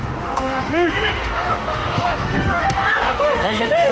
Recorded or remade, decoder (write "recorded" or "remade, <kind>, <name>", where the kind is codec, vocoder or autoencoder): remade, autoencoder, DAC-VAE